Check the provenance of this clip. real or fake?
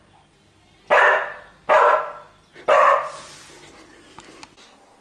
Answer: real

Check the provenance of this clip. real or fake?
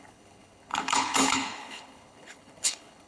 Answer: fake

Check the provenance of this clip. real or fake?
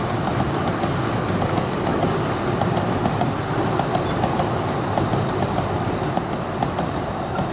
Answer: real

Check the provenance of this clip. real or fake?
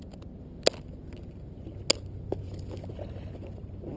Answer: real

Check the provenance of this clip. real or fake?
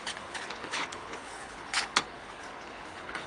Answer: fake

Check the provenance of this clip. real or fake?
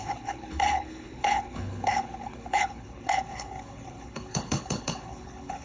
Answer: fake